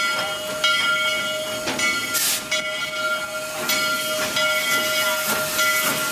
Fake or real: real